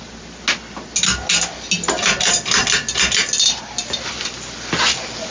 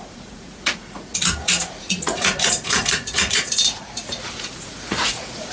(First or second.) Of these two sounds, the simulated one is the second